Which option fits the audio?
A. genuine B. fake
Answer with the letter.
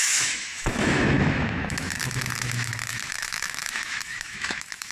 B